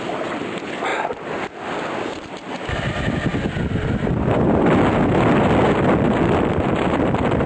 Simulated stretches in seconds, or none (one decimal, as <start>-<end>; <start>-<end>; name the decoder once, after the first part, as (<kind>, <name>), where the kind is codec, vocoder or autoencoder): none